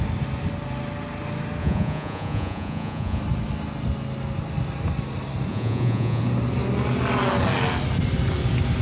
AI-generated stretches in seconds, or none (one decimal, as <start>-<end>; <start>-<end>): 1.6-3.2; 5.5-6.2